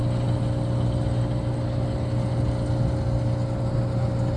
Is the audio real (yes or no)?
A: yes